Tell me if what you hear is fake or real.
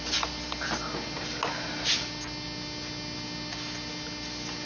real